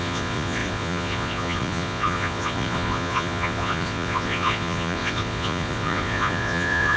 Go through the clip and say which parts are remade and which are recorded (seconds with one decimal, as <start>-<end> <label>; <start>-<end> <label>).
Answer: 0.0-7.0 remade